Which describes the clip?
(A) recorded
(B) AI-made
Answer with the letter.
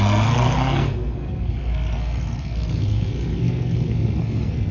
B